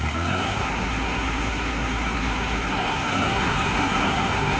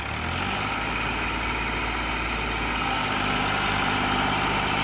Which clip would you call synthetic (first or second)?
first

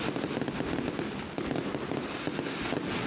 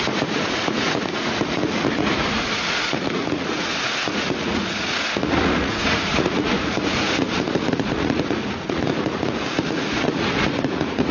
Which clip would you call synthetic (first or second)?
second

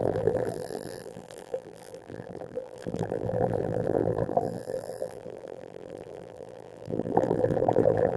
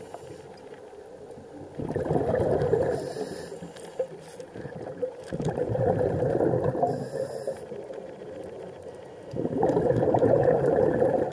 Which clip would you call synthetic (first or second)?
first